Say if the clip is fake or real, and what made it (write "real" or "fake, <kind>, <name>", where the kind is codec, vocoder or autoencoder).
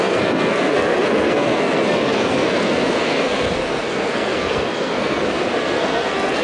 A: fake, codec, SNAC